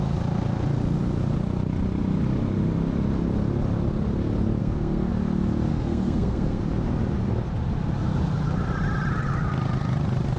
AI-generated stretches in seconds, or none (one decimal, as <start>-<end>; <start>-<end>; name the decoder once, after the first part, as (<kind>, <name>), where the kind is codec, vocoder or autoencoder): 4.6-5.1 (codec, SNAC); 5.7-6.6